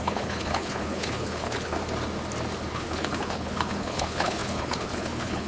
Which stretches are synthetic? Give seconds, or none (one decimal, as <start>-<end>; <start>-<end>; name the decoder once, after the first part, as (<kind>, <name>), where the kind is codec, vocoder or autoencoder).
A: 0.0-1.8 (codec, HILCodec); 2.7-5.5